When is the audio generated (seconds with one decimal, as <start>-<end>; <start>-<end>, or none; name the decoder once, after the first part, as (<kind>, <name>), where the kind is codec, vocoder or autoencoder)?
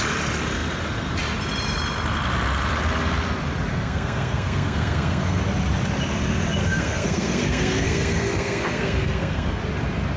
3.7-5.4 (codec, SNAC); 6.6-9.6